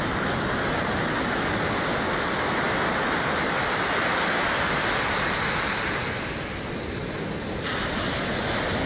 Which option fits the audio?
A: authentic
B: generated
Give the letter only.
A